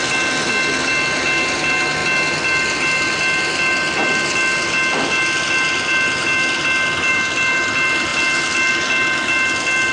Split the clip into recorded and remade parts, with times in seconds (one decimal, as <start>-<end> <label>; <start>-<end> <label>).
0.0-9.9 recorded